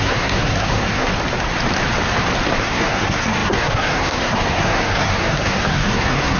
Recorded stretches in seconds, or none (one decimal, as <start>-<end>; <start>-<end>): 1.1-2.6